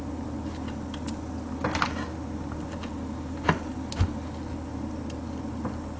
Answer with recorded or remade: recorded